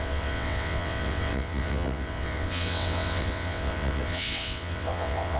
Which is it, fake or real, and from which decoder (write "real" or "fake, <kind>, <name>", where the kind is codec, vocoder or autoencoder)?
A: fake, vocoder, WaveNeXt